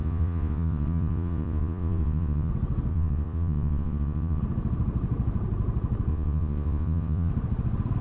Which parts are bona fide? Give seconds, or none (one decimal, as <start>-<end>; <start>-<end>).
2.5-2.9; 4.4-6.1; 7.3-8.0